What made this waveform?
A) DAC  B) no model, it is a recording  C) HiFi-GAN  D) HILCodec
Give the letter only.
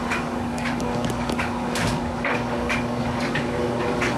A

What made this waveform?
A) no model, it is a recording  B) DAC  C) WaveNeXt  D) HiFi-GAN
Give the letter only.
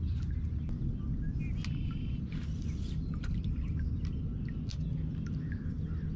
A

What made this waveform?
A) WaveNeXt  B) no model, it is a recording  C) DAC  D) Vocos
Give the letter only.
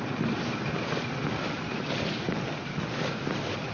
B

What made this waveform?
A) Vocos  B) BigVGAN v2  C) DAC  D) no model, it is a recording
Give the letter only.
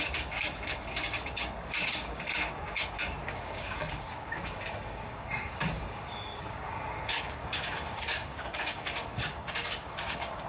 C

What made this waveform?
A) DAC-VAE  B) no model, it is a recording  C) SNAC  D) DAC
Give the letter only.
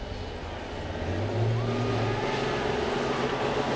B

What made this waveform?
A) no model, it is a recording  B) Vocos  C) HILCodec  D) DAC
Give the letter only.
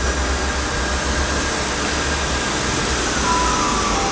A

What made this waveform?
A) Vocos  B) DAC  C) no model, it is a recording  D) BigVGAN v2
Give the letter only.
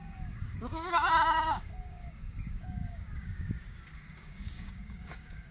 B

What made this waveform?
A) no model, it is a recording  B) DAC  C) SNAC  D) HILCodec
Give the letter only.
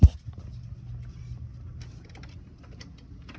A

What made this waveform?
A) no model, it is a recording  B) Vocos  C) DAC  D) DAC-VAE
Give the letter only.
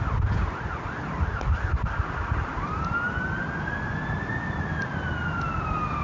A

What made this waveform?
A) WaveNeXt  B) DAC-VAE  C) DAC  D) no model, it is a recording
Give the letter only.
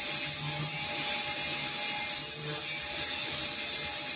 D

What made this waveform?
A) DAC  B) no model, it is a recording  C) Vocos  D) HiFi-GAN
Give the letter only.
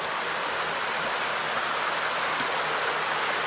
B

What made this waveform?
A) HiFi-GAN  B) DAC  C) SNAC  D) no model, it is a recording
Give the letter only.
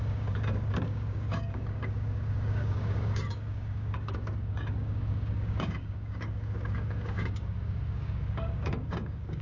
B